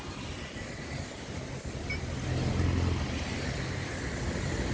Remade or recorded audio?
recorded